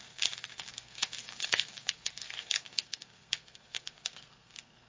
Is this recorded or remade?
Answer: remade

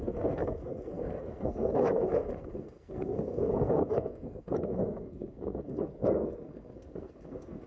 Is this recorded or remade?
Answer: remade